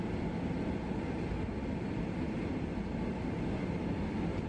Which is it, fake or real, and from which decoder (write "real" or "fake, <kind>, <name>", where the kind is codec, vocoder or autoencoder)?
real